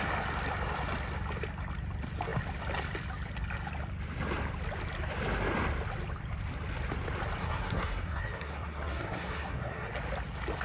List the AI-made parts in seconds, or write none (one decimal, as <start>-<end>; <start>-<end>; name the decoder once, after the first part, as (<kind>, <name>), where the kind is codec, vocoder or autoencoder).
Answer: 7.4-9.9 (codec, SNAC)

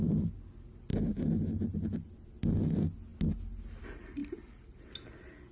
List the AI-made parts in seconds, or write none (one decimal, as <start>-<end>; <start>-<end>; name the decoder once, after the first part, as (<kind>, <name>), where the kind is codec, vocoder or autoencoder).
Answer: none

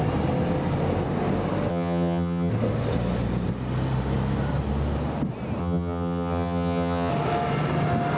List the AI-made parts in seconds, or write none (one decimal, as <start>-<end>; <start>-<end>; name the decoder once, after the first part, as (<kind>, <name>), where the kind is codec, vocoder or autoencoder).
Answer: 1.7-2.5 (vocoder, HiFi-GAN); 5.6-7.1

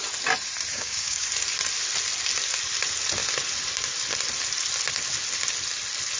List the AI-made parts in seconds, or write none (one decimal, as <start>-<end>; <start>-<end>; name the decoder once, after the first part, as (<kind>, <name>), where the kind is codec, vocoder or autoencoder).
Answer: 0.7-1.3 (codec, DAC)

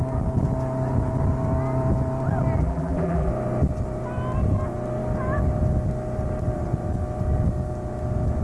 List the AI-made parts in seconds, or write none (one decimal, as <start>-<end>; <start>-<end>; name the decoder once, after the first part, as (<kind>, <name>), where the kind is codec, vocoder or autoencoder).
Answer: 2.6-3.3 (vocoder, BigVGAN v2)

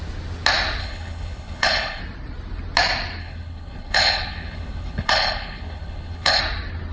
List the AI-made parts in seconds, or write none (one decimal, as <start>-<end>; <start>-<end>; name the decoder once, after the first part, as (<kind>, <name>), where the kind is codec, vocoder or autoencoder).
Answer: 0.8-2.0 (codec, HILCodec); 3.2-6.4

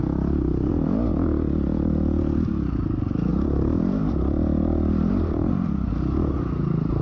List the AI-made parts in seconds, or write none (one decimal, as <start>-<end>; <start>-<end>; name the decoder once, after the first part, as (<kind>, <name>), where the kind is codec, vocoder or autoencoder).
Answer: 1.7-2.2 (vocoder, BigVGAN v2); 3.3-5.9